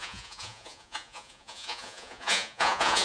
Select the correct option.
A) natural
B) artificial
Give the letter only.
B